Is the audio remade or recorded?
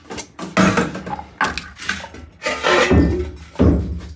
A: recorded